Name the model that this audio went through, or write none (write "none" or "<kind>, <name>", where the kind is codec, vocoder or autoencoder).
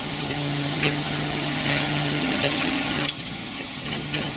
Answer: vocoder, HiFi-GAN